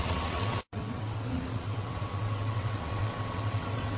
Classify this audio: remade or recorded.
remade